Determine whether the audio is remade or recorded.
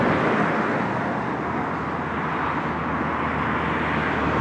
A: recorded